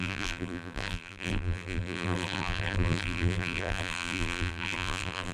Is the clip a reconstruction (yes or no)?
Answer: yes